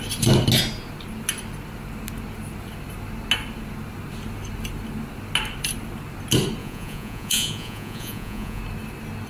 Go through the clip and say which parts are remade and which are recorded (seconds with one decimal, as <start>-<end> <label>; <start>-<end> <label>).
0.0-6.6 recorded; 6.6-8.6 remade; 8.6-9.3 recorded